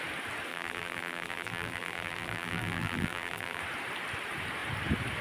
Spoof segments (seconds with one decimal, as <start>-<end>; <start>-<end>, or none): 0.5-3.6